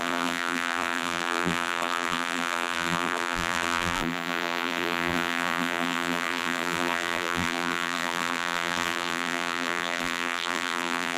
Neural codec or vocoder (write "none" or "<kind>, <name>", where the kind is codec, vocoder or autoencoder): vocoder, BigVGAN v2